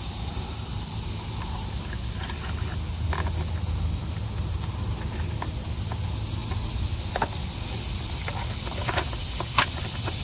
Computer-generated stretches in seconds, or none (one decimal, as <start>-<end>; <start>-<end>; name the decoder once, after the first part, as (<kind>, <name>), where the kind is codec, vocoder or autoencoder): 6.4-10.2 (vocoder, BigVGAN v2)